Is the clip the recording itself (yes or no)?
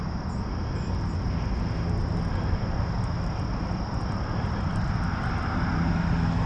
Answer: yes